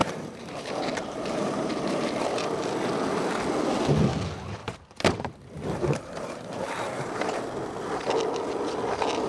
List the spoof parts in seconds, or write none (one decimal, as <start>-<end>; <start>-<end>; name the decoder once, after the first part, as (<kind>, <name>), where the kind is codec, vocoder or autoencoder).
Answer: 0.0-2.1 (vocoder, BigVGAN v2); 4.6-7.4